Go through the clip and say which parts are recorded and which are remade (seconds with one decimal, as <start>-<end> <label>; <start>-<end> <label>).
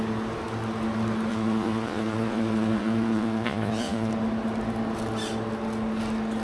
0.0-1.3 recorded; 1.3-4.1 remade; 4.1-6.4 recorded